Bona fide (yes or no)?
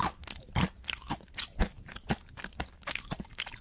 yes